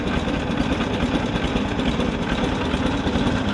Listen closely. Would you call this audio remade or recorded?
recorded